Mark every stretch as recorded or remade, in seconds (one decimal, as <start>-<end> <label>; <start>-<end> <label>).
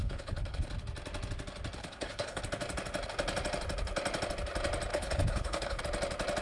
0.0-0.7 remade; 0.7-1.8 recorded; 1.8-2.4 remade; 2.4-4.9 recorded; 4.9-5.8 remade; 5.8-6.4 recorded